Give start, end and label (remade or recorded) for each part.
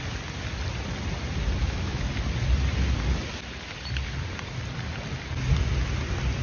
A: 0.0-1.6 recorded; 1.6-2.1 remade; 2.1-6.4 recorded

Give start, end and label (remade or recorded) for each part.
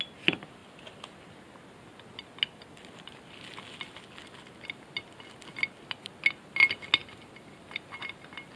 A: 0.0-8.6 recorded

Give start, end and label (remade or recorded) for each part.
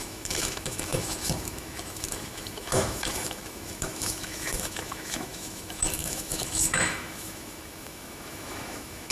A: 0.0-9.1 remade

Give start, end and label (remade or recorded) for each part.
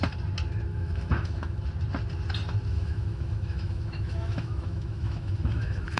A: 0.0-0.7 recorded; 0.7-1.6 remade; 1.6-2.7 recorded; 2.7-6.0 remade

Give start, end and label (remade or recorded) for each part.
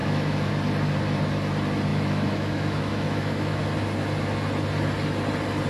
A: 0.0-0.5 remade; 0.5-1.9 recorded; 1.9-3.6 remade; 3.6-5.7 recorded